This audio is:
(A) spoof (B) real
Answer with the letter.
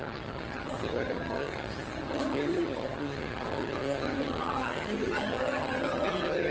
A